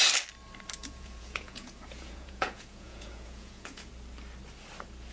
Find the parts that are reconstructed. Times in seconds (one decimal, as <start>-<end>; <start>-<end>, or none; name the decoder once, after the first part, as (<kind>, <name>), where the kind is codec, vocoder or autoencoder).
0.8-3.9 (vocoder, Vocos)